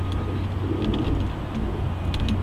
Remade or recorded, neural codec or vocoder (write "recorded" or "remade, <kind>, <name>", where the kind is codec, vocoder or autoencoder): recorded